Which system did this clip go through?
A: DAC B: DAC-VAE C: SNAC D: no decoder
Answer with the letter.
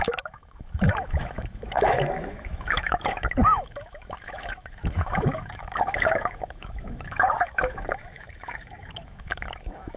B